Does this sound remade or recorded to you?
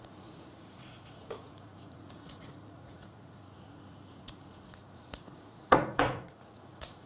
remade